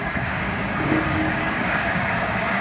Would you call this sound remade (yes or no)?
yes